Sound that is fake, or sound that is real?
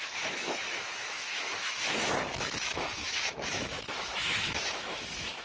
fake